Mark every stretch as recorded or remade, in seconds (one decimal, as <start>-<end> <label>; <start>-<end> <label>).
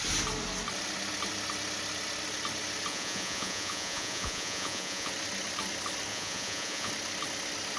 0.0-2.9 recorded; 2.9-5.1 remade; 5.1-6.1 recorded; 6.1-6.9 remade; 6.9-7.8 recorded